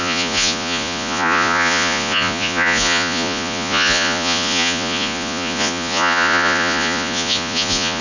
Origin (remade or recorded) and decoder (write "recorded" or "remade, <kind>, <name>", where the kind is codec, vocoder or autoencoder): remade, vocoder, Vocos